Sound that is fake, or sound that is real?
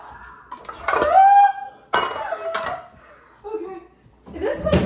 real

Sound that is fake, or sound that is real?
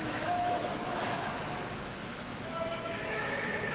fake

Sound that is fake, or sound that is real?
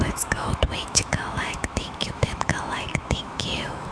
fake